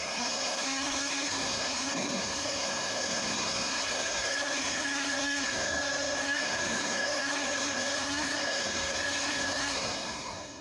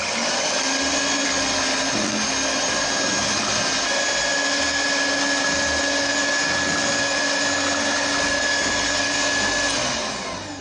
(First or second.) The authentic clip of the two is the second